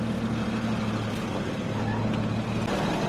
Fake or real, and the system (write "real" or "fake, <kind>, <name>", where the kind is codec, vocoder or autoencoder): real